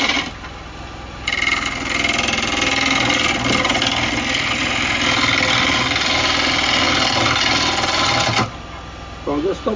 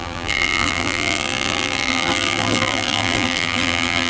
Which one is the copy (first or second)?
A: second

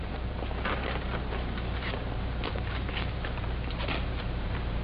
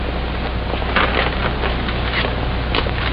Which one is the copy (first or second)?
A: first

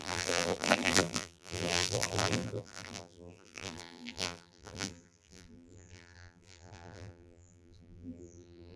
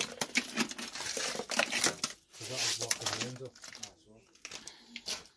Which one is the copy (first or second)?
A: first